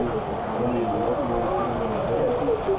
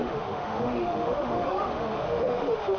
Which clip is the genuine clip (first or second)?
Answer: first